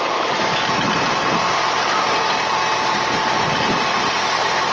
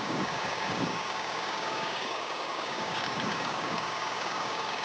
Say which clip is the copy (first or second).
second